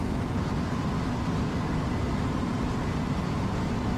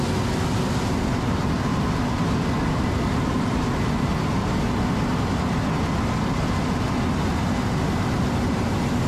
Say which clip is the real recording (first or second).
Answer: second